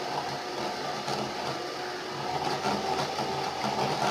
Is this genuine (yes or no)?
yes